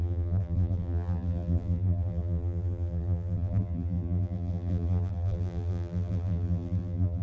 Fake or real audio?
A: fake